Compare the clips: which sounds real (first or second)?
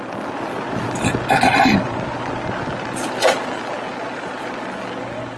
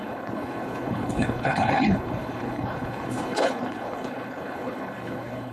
first